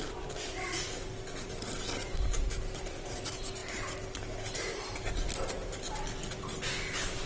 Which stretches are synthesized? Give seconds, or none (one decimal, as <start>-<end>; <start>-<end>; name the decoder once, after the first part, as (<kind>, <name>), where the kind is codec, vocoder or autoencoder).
0.0-3.6 (vocoder, BigVGAN v2); 5.4-6.5